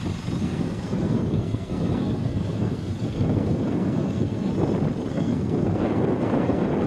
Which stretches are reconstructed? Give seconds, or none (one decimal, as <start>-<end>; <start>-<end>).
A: 0.4-4.5; 5.1-6.9